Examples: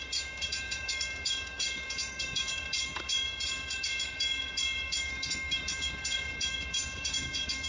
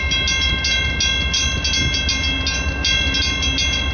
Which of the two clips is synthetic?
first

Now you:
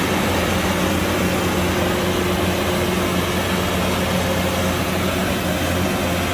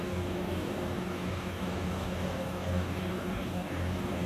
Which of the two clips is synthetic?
second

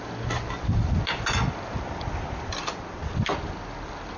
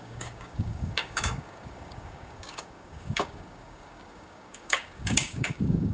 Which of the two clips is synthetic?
second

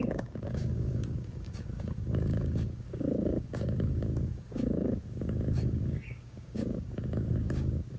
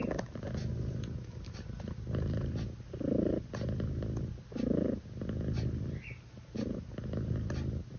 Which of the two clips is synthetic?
first